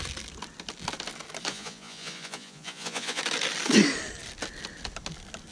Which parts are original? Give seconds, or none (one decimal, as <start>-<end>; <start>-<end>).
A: 0.0-1.5; 3.2-5.5